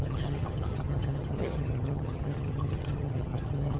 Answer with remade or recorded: remade